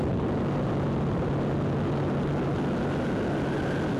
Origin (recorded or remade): recorded